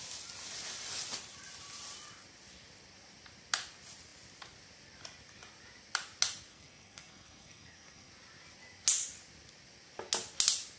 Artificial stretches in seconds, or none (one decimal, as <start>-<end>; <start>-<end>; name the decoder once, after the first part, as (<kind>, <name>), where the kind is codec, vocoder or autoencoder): 6.5-8.1 (codec, SNAC)